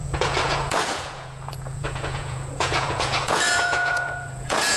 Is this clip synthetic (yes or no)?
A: yes